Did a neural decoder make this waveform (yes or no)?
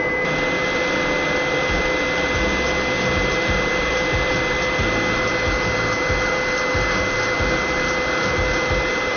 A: no